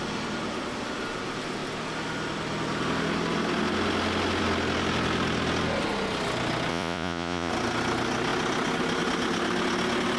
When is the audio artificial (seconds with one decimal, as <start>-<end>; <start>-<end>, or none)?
6.7-7.5